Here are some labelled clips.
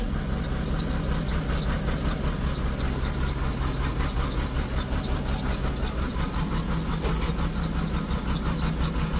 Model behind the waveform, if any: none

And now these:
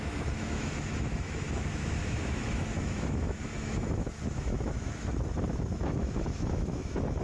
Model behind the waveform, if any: autoencoder, DAC-VAE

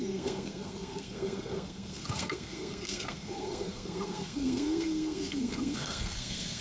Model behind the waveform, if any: codec, SNAC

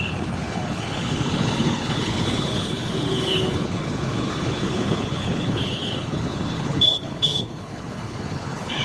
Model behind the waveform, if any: codec, HILCodec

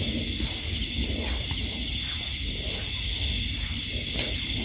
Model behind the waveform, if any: none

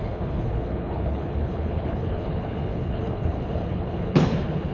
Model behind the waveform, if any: codec, HILCodec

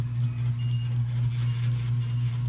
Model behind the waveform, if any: none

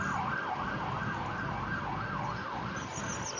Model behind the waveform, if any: none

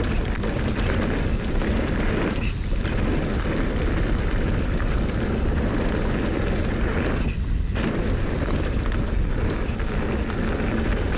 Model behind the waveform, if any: none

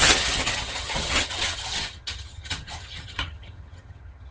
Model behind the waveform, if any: vocoder, HiFi-GAN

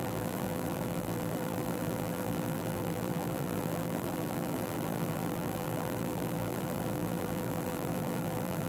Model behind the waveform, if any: vocoder, BigVGAN v2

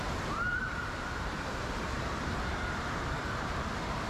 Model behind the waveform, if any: vocoder, BigVGAN v2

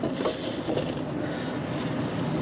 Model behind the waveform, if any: none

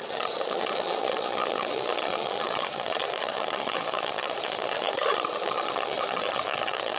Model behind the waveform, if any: vocoder, Vocos